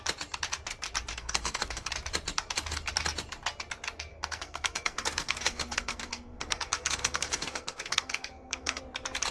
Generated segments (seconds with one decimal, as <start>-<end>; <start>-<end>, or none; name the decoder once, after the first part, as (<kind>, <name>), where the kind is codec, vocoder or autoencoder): 1.1-1.9 (codec, SNAC); 4.1-8.8